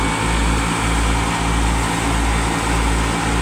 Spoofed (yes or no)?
no